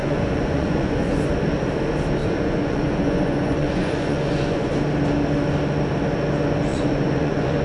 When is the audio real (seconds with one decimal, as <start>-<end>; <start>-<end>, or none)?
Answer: 1.2-2.2; 4.7-6.7